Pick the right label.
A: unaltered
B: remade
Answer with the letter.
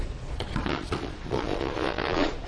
B